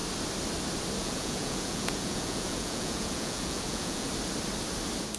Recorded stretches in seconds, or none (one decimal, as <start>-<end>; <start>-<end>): 0.0-1.0; 4.1-5.2